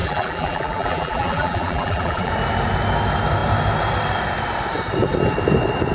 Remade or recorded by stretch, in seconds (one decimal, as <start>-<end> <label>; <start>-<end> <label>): 0.0-2.3 remade; 2.3-5.9 recorded